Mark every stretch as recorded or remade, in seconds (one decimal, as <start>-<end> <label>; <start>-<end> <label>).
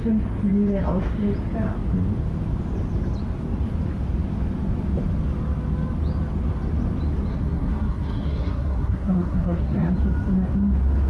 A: 0.0-7.3 recorded; 7.3-9.9 remade; 9.9-11.1 recorded